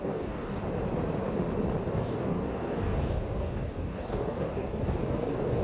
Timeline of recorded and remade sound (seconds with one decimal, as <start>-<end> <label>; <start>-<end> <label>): 0.0-0.6 remade; 0.6-1.9 recorded; 1.9-5.6 remade